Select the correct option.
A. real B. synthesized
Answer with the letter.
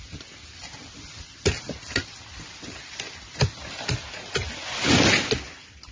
A